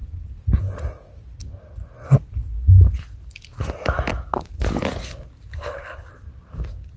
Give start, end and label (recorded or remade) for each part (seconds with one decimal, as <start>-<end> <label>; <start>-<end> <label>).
0.0-5.5 recorded; 5.5-6.1 remade; 6.1-7.0 recorded